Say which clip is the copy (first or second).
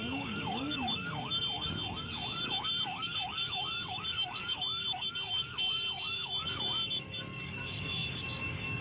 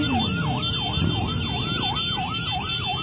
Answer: first